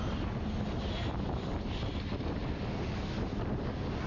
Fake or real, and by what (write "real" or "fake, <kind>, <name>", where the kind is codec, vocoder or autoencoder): real